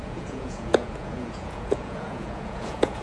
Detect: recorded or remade remade